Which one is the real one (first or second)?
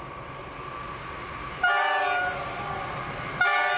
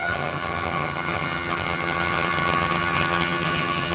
first